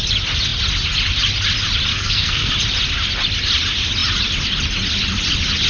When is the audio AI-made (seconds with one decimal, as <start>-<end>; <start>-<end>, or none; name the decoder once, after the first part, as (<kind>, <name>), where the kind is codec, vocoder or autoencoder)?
1.9-2.5 (codec, SNAC)